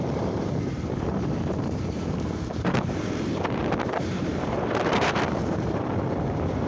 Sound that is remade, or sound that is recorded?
remade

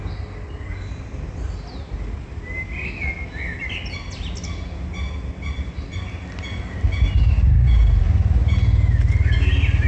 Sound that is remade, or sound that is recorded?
recorded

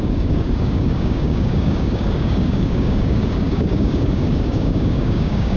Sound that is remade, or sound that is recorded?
remade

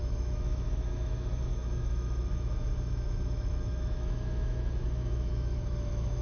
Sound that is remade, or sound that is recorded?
remade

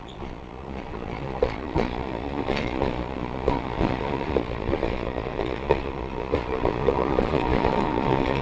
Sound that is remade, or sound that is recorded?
remade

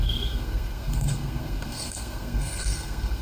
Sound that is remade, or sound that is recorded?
remade